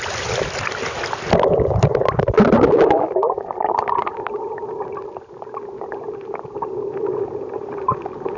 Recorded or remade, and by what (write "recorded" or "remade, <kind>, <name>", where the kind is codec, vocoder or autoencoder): recorded